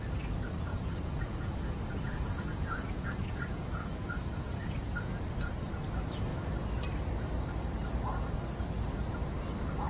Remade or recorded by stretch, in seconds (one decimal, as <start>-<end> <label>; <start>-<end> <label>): 0.0-0.7 recorded; 0.7-5.2 remade; 5.2-9.9 recorded